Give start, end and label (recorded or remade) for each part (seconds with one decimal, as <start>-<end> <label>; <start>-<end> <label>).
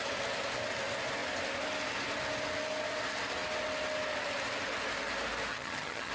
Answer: 0.0-5.5 recorded; 5.5-6.1 remade